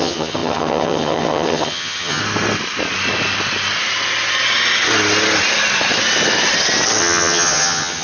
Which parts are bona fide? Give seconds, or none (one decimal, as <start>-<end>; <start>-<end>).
2.2-7.0

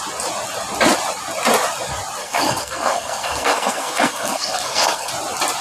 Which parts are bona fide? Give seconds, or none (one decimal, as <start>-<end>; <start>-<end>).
0.0-2.2; 5.1-5.6

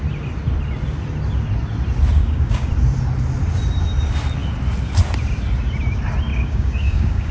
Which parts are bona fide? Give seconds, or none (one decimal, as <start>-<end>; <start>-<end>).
0.0-2.2; 2.7-6.3

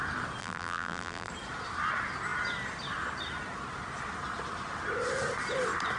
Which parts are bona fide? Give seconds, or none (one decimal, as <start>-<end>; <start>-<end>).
0.0-0.4; 1.3-6.0